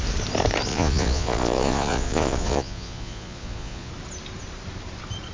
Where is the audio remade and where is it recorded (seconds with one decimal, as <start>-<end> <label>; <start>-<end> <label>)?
0.0-0.7 recorded; 0.7-3.9 remade; 3.9-5.3 recorded